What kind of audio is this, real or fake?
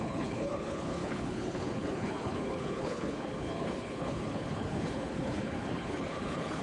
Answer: fake